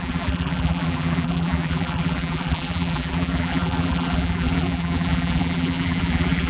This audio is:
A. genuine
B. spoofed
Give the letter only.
B